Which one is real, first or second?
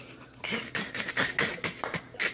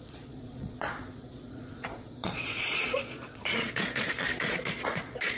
first